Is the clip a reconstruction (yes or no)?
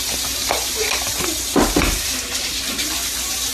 no